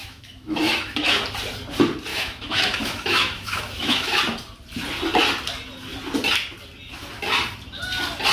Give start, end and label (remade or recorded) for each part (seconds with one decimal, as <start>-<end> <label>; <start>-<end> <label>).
0.0-1.2 remade; 1.2-2.1 recorded; 2.1-4.2 remade; 4.2-8.3 recorded